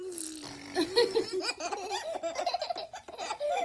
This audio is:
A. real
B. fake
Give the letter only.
A